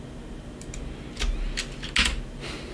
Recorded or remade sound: recorded